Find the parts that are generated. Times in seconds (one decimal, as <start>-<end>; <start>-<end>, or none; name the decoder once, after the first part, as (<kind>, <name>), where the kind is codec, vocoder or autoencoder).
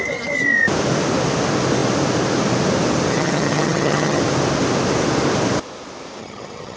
3.1-4.2 (vocoder, HiFi-GAN); 6.2-6.8